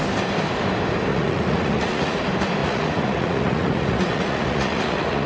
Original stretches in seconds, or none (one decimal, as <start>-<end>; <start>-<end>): 0.0-1.1; 2.2-2.6

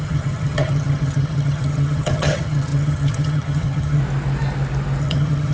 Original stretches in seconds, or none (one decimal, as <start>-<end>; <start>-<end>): 4.0-5.0

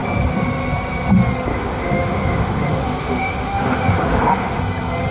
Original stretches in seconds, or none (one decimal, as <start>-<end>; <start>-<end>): 0.0-1.5; 4.6-5.1

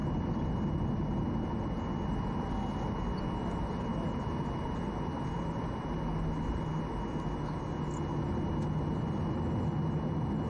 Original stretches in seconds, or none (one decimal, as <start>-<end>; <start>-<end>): 0.0-10.5

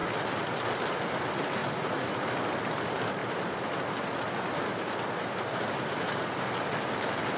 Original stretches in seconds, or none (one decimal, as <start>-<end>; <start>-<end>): 0.0-0.9; 1.6-2.1; 3.2-6.3

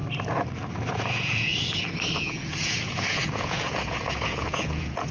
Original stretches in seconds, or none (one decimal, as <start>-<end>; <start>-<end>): 0.0-0.9; 1.5-2.2

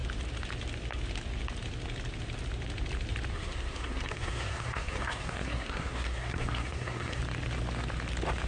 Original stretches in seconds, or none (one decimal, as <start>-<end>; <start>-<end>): 0.0-3.3; 7.2-8.5

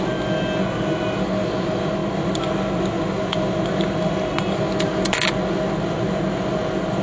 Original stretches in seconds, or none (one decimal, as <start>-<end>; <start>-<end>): 0.0-7.0